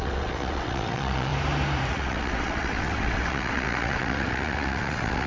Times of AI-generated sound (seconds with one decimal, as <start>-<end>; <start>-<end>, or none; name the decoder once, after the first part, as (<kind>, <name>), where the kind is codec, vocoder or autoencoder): 0.0-1.3 (vocoder, WaveNeXt); 1.9-5.3